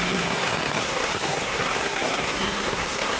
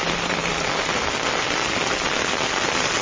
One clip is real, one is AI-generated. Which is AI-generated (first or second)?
first